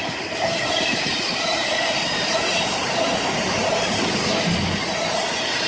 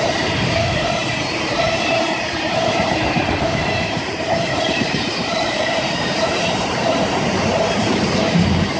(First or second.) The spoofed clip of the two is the second